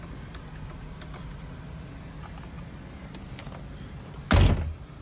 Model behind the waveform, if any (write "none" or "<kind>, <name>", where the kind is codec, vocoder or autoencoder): none